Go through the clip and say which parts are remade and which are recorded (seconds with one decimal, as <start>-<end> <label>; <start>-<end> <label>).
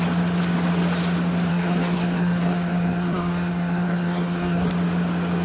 0.0-1.5 recorded; 1.5-4.7 remade; 4.7-5.4 recorded